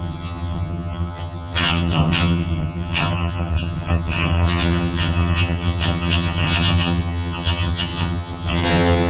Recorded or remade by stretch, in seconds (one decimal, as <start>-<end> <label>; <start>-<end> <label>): 0.0-9.1 remade